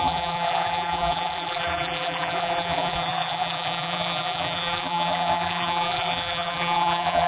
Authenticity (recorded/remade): remade